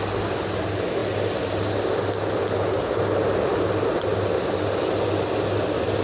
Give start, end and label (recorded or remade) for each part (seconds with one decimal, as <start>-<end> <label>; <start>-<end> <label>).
0.0-6.0 recorded